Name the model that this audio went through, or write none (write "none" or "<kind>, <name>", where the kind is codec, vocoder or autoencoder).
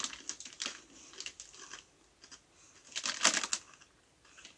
none